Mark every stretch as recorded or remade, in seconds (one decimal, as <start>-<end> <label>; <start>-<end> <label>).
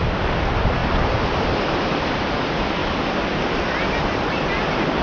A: 0.0-2.8 remade; 2.8-3.5 recorded; 3.5-5.0 remade